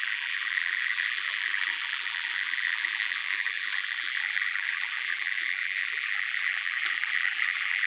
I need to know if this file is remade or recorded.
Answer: remade